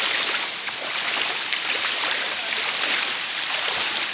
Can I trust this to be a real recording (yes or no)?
no